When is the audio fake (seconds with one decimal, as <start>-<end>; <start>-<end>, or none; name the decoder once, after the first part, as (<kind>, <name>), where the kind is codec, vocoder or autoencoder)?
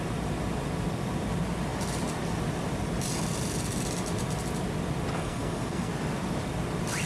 5.1-5.9 (codec, SNAC)